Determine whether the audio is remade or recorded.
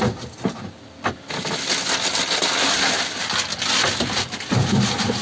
recorded